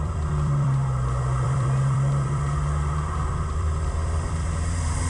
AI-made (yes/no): yes